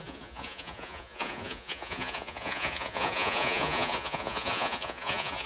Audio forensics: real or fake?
fake